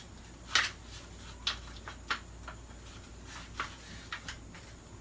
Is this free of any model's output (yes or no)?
yes